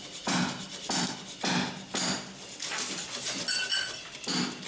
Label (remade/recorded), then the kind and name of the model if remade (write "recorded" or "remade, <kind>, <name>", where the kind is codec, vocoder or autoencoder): recorded